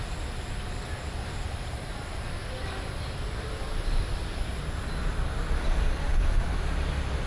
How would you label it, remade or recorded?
recorded